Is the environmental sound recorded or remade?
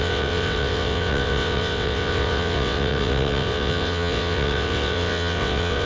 remade